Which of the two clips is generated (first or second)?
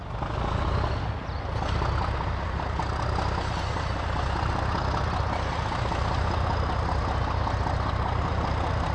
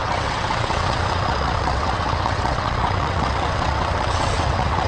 second